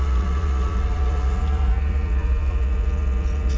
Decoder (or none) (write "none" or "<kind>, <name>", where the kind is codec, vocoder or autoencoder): vocoder, Vocos